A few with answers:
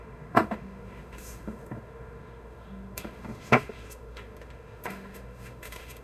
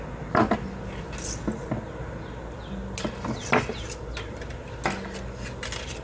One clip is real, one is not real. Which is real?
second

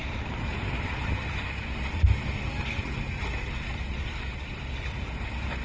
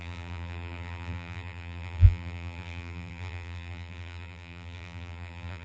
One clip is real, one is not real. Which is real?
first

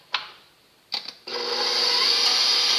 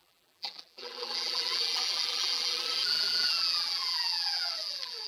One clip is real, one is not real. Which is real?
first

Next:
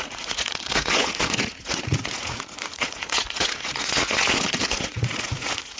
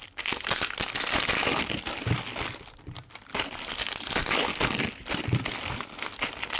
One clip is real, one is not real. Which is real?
second